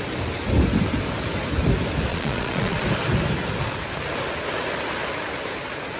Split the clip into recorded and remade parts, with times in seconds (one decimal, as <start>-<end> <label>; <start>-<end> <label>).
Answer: 0.0-2.1 recorded; 2.1-2.8 remade; 2.8-6.0 recorded